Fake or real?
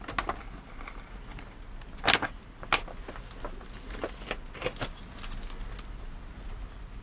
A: real